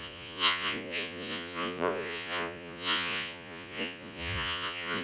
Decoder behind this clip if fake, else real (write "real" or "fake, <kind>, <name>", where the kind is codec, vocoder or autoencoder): fake, vocoder, Vocos